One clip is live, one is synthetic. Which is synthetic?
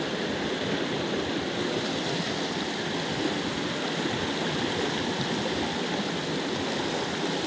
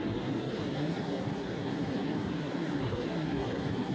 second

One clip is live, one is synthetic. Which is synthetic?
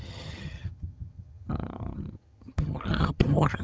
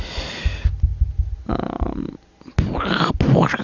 first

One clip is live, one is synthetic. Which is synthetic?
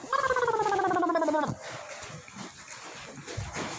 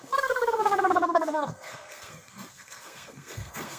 second